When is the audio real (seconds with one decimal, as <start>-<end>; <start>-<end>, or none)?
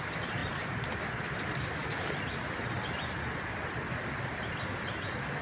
0.0-5.4